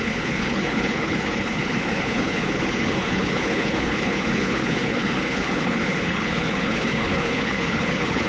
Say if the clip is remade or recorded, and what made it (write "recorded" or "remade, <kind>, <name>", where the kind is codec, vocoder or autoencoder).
remade, codec, HILCodec